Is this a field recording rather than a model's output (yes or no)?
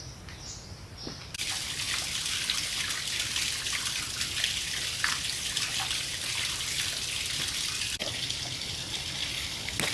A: yes